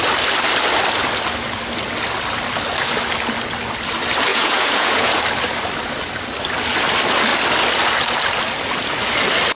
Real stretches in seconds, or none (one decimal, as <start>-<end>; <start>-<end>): 0.0-4.3; 5.2-9.5